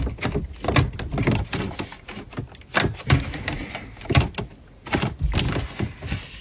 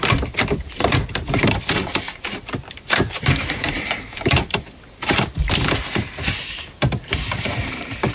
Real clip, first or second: first